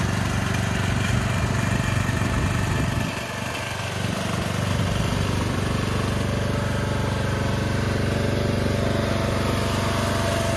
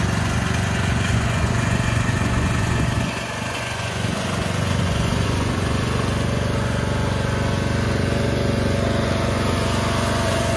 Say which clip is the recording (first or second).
first